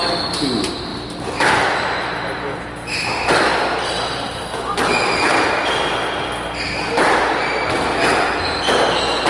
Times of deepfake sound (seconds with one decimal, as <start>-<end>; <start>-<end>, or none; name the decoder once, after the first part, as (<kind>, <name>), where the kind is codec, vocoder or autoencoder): none